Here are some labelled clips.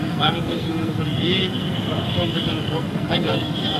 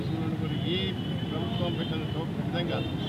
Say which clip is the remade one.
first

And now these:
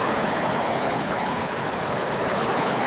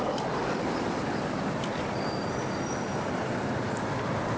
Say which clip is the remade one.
first